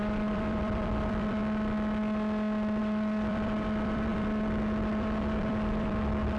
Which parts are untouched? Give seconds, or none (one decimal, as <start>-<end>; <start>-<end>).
1.4-2.8